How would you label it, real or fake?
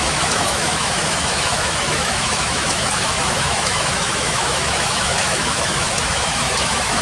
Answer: fake